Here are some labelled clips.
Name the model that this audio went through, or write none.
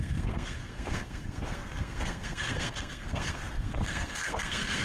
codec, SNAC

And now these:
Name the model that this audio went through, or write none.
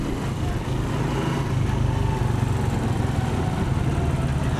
none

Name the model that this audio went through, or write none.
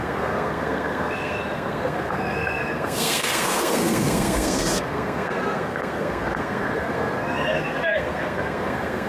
codec, SNAC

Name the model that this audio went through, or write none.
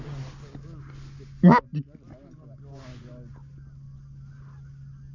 none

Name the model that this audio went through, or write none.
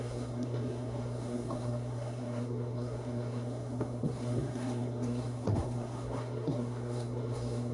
codec, SNAC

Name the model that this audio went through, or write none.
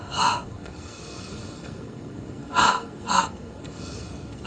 codec, SNAC